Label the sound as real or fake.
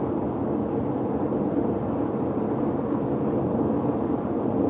real